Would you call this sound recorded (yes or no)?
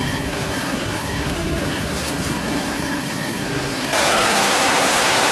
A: no